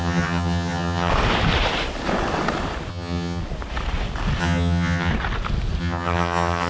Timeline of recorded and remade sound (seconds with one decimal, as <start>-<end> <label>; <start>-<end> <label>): 0.0-1.1 remade; 1.1-2.9 recorded; 2.9-3.4 remade; 3.4-4.4 recorded; 4.4-5.1 remade; 5.1-5.8 recorded; 5.8-6.7 remade